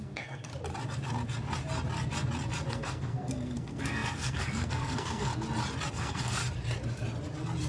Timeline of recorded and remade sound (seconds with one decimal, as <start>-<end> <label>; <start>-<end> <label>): 0.0-0.5 remade; 0.5-2.7 recorded; 2.7-5.3 remade; 5.3-5.9 recorded; 5.9-6.4 remade; 6.4-7.7 recorded